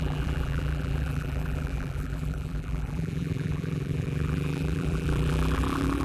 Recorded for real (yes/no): no